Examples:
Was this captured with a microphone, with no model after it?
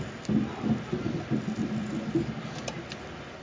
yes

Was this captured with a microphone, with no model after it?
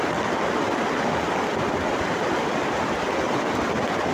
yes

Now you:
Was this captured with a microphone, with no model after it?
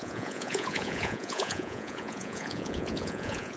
no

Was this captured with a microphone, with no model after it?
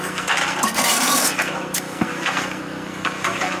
no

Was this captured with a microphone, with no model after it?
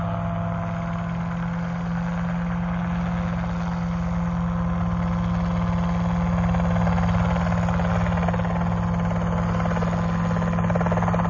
yes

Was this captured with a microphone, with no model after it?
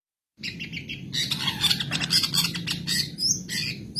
yes